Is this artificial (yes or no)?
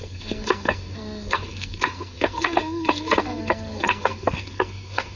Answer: yes